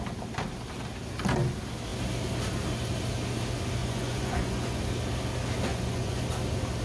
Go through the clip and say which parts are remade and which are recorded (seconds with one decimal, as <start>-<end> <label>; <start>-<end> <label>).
0.0-3.8 recorded; 3.8-4.8 remade; 4.8-5.7 recorded; 5.7-6.2 remade; 6.2-6.8 recorded